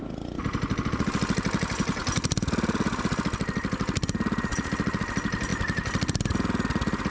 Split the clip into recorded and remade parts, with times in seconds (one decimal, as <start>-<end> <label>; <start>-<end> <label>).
0.0-7.1 recorded